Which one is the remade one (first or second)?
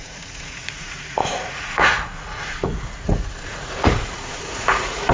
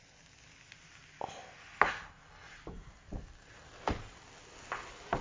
first